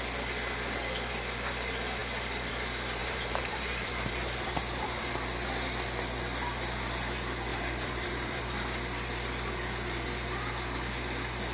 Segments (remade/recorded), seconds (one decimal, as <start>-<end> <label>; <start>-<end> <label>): 0.0-3.0 recorded; 3.0-5.1 remade; 5.1-7.5 recorded; 7.5-8.4 remade; 8.4-11.5 recorded